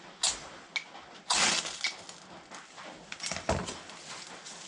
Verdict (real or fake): real